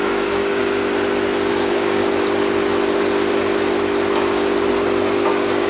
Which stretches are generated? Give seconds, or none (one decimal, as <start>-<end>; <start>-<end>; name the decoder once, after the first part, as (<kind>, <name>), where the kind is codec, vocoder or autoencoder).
0.0-0.6 (codec, DAC); 1.5-2.0; 4.7-5.7